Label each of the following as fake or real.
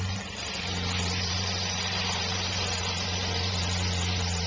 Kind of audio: fake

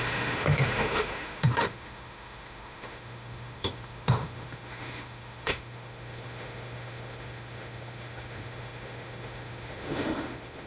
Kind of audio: fake